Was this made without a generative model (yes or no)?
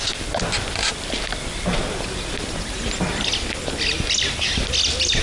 yes